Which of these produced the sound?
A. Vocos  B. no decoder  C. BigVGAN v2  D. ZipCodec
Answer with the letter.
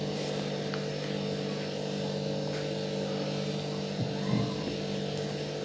B